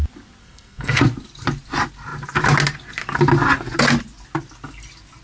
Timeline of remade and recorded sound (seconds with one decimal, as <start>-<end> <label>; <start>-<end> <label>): 0.0-0.4 recorded; 0.4-1.0 remade; 1.0-5.2 recorded